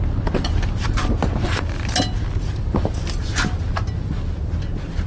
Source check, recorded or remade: recorded